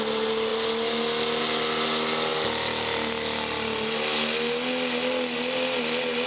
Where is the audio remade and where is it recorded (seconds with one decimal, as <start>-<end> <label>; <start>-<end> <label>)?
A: 0.0-6.3 recorded